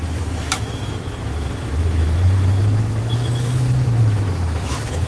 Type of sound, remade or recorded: remade